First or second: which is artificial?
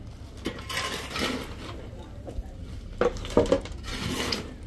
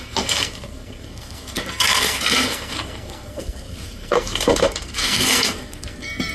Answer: second